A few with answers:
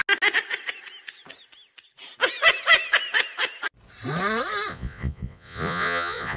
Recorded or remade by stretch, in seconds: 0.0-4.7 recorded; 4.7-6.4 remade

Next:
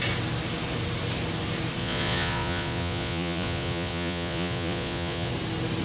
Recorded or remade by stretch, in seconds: 0.0-1.8 recorded; 1.8-5.3 remade; 5.3-5.8 recorded

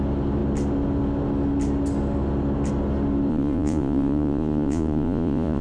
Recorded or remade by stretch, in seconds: 0.0-3.3 recorded; 3.3-5.6 remade